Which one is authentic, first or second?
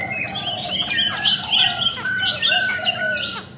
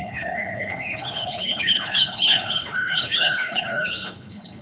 first